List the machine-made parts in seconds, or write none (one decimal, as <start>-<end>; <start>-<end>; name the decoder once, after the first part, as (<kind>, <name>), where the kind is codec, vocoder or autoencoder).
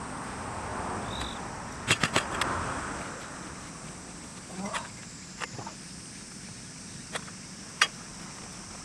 none